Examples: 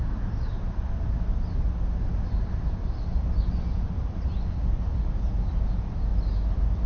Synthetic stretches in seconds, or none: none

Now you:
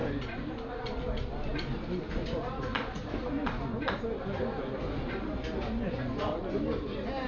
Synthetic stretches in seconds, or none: none

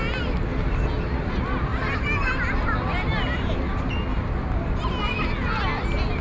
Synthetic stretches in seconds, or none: none

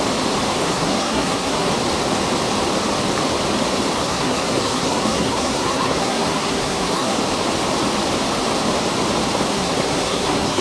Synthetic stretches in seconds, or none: 0.6-1.7 (codec, SNAC); 4.0-7.2; 9.5-10.6

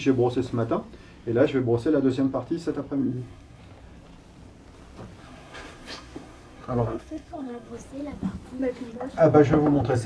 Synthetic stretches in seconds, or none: 3.0-3.6 (codec, SNAC); 5.2-7.7

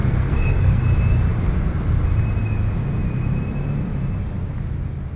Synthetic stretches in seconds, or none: 0.0-0.8 (codec, SNAC)

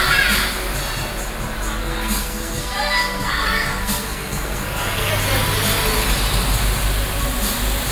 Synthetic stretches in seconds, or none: 1.8-5.1 (codec, SNAC)

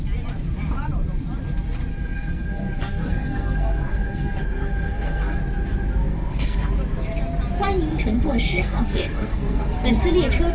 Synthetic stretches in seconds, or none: 1.9-5.4 (codec, SNAC); 6.1-6.7; 7.9-9.9